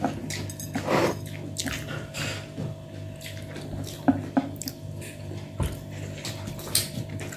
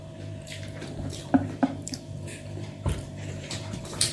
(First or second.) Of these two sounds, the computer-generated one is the second